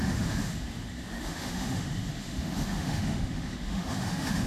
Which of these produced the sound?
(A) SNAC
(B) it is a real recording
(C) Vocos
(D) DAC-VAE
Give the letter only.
D